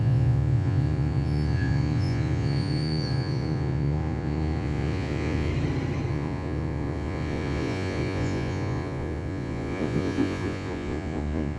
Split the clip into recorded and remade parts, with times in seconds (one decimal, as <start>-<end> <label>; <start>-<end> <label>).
0.0-5.5 remade; 5.5-6.1 recorded; 6.1-11.6 remade